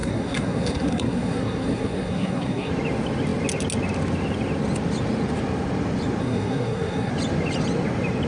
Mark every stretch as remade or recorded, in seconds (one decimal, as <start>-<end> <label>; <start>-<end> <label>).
0.0-2.7 remade; 2.7-6.2 recorded; 6.2-7.1 remade; 7.1-8.3 recorded